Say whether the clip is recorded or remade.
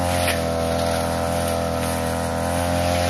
recorded